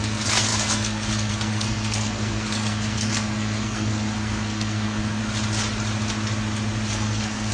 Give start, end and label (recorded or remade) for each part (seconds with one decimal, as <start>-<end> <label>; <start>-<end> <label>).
0.0-5.2 remade; 5.2-6.9 recorded; 6.9-7.5 remade